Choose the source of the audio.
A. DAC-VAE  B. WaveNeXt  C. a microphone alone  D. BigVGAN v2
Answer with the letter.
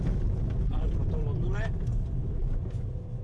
C